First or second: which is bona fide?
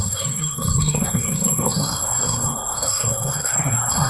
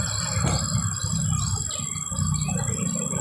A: second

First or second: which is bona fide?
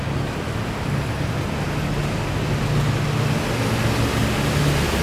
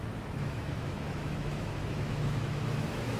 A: first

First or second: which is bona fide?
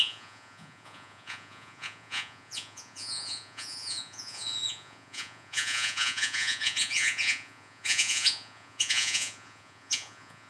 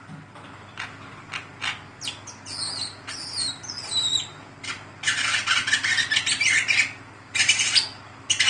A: second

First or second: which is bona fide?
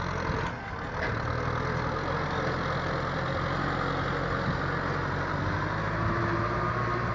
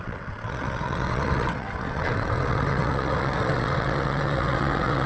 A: first